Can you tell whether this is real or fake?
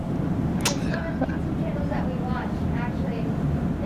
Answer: real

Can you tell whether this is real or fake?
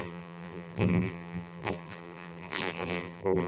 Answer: fake